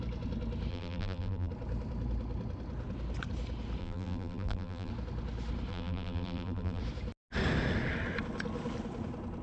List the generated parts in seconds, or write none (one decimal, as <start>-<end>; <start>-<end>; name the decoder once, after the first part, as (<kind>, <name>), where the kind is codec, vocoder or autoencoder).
0.7-1.5 (vocoder, BigVGAN v2); 3.8-4.9; 5.7-6.8

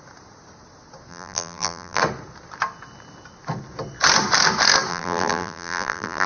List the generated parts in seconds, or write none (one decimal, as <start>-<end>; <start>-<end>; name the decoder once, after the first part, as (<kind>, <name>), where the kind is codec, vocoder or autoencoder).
1.1-2.0 (vocoder, BigVGAN v2); 4.9-6.3

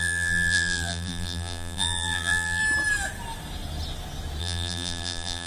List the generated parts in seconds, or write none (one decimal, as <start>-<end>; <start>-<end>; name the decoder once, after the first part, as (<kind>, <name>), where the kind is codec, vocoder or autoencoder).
0.0-2.6 (vocoder, BigVGAN v2); 4.4-5.5